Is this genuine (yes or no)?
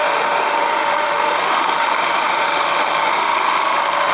no